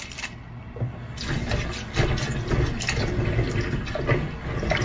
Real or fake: real